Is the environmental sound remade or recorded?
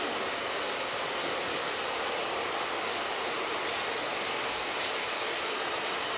recorded